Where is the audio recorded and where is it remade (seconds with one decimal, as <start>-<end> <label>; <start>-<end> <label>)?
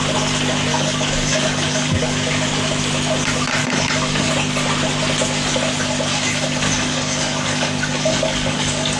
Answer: 0.0-0.7 recorded; 0.7-2.4 remade; 2.4-3.6 recorded; 3.6-4.3 remade; 4.3-6.1 recorded; 6.1-9.0 remade